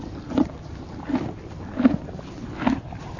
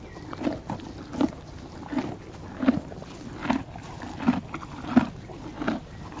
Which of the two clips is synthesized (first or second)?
first